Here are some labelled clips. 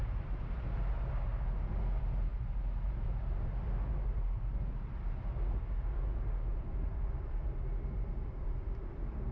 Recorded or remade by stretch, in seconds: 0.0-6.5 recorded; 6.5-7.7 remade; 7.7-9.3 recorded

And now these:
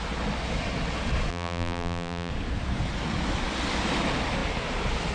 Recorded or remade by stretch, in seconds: 0.0-1.3 recorded; 1.3-2.3 remade; 2.3-5.1 recorded

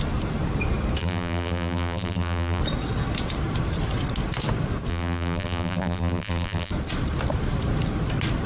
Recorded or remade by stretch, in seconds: 0.0-1.0 recorded; 1.0-2.6 remade; 2.6-4.9 recorded; 4.9-6.7 remade; 6.7-8.5 recorded

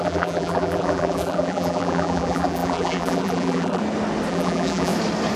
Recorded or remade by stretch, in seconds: 0.0-3.8 remade; 3.8-4.3 recorded; 4.3-4.9 remade; 4.9-5.4 recorded

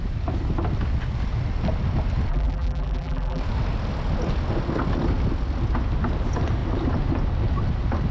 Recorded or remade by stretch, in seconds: 0.0-2.3 recorded; 2.3-3.4 remade; 3.4-8.1 recorded

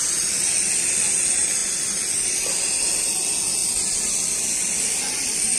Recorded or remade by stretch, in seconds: 0.0-5.6 recorded